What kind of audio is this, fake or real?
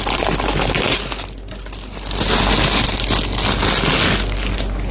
real